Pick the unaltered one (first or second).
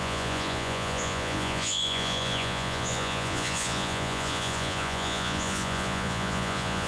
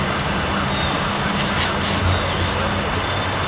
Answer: second